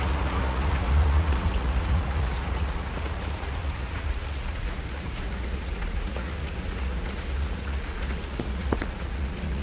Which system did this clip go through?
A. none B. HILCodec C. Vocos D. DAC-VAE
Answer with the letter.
C